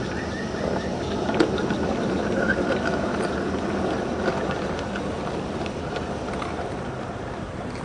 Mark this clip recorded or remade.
remade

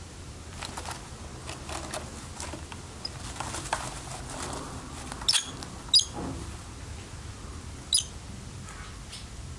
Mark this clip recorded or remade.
recorded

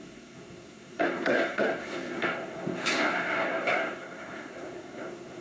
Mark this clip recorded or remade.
remade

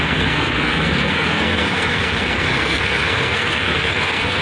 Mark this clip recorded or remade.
remade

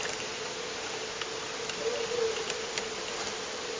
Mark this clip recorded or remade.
recorded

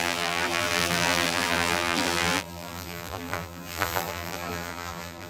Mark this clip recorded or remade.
remade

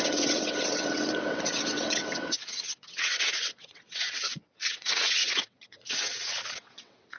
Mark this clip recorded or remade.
remade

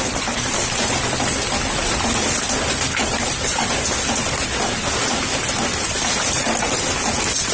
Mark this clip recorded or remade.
recorded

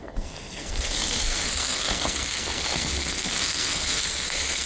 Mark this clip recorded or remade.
remade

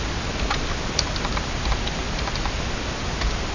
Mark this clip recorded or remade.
recorded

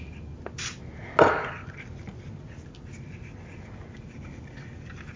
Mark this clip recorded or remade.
recorded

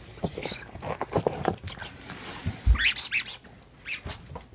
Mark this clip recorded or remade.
recorded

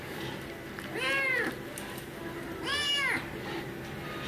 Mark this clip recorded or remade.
recorded